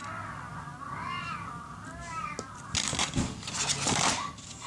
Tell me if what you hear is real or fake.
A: real